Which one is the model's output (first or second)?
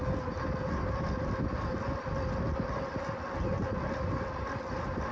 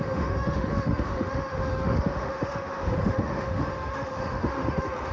second